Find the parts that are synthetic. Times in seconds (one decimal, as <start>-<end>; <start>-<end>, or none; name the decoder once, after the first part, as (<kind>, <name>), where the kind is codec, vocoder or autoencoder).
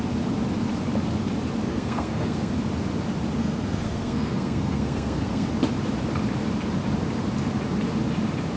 1.7-2.5 (codec, SNAC); 3.4-5.5